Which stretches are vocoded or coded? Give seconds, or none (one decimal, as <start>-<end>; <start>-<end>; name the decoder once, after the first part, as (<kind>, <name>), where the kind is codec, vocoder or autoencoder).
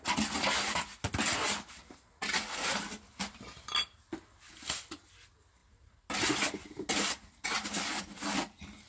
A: none